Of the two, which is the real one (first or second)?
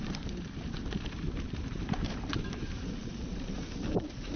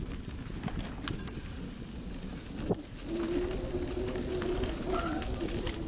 second